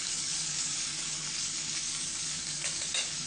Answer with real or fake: fake